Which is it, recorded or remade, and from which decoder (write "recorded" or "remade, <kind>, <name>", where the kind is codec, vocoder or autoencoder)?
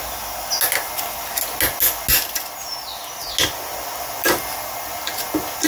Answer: recorded